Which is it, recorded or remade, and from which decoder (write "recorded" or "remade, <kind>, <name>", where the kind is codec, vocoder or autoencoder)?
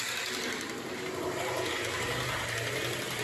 recorded